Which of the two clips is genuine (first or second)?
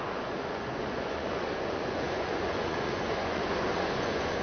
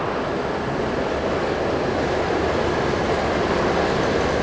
second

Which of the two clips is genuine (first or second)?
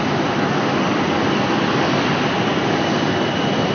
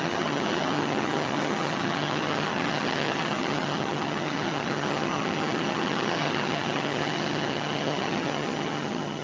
first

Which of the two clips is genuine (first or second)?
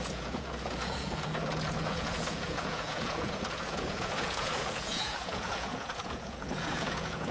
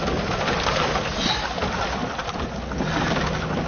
second